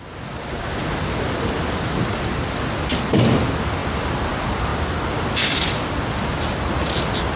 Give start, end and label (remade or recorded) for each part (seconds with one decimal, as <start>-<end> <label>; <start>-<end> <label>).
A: 0.0-7.4 recorded